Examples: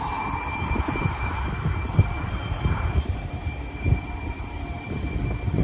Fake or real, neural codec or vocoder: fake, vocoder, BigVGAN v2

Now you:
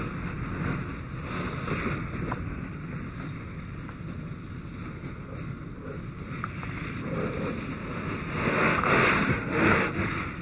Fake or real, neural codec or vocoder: real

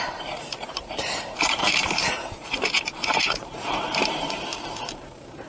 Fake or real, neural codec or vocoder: fake, vocoder, BigVGAN v2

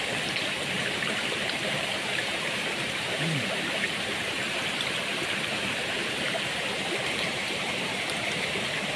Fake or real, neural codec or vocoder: fake, vocoder, BigVGAN v2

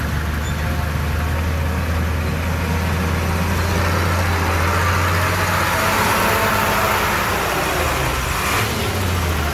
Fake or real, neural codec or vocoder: real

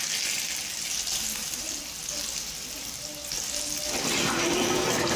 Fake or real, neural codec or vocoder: real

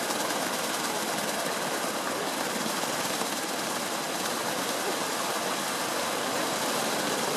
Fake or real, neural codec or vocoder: fake, vocoder, BigVGAN v2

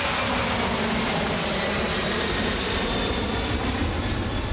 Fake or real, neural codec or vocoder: fake, vocoder, BigVGAN v2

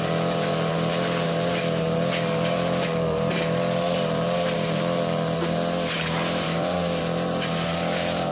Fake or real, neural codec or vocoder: fake, vocoder, BigVGAN v2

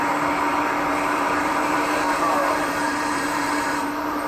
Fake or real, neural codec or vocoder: fake, vocoder, BigVGAN v2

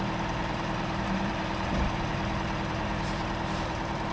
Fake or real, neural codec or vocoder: fake, vocoder, BigVGAN v2